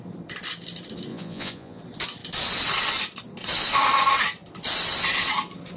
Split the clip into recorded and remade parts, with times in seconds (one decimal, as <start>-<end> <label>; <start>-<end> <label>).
0.0-1.1 recorded; 1.1-1.8 remade; 1.8-5.8 recorded